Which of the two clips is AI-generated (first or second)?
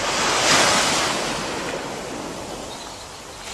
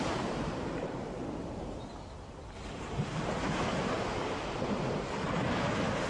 second